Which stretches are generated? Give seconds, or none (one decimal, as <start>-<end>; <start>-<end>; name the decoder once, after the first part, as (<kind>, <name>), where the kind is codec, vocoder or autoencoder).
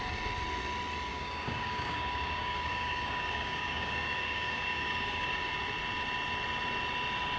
1.1-5.5 (codec, DAC)